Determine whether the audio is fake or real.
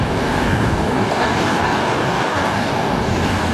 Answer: fake